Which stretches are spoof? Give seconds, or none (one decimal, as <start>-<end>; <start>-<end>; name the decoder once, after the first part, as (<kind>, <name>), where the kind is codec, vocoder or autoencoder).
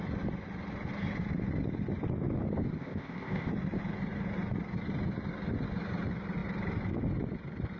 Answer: 2.8-3.5 (codec, ZipCodec)